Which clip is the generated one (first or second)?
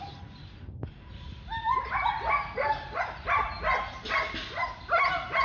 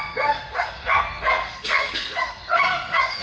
second